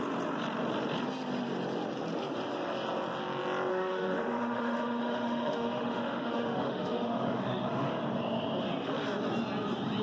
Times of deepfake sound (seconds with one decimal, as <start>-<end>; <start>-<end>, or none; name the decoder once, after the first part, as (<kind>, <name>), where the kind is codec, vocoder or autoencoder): 3.7-7.9 (autoencoder, DAC-VAE)